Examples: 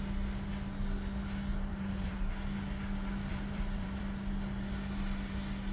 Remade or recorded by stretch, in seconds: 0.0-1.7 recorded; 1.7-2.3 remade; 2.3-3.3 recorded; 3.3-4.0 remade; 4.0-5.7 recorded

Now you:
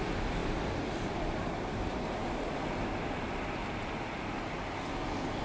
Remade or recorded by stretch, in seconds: 0.0-2.2 remade; 2.2-5.4 recorded

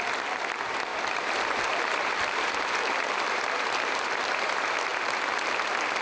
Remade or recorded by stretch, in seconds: 0.0-0.9 recorded; 0.9-4.2 remade; 4.2-6.0 recorded

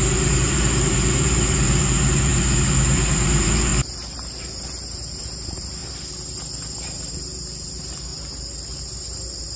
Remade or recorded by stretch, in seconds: 0.0-5.8 remade; 5.8-7.1 recorded; 7.1-9.6 remade

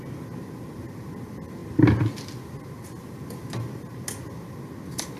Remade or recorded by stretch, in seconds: 0.0-5.2 recorded

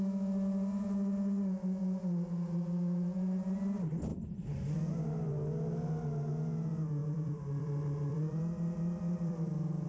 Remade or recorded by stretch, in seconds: 0.0-7.0 recorded; 7.0-9.9 remade